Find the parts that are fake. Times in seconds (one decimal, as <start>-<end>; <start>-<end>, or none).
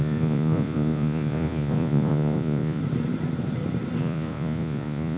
0.0-2.8; 4.0-5.2